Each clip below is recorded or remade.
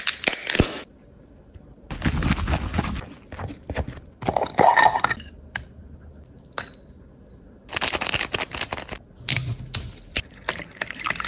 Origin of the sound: recorded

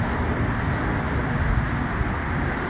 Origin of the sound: recorded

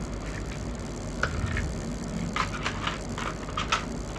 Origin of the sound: recorded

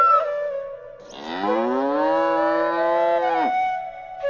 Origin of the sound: recorded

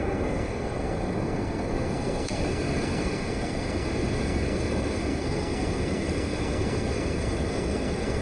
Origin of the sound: remade